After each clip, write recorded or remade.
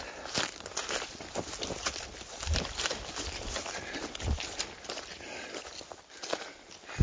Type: recorded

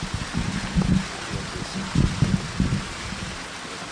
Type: recorded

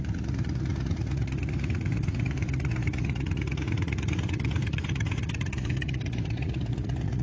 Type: remade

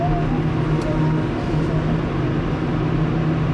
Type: recorded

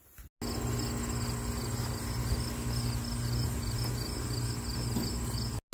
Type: recorded